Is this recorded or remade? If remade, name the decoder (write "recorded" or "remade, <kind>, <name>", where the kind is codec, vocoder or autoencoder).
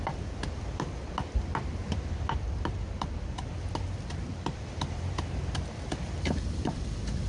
remade, vocoder, BigVGAN v2